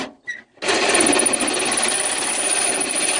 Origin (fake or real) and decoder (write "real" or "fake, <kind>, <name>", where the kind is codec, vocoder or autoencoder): real